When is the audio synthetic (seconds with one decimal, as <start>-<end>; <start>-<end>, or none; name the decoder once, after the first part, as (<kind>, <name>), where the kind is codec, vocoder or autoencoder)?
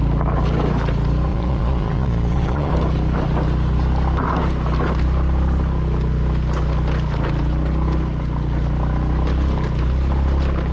1.3-2.7 (vocoder, Vocos)